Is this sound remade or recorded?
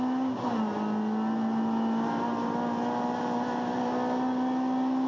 recorded